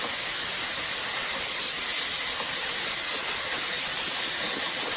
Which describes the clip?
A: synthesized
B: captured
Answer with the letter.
B